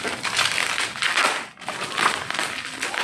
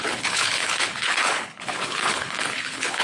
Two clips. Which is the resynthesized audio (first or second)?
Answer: second